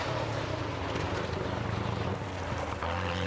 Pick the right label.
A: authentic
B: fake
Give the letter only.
A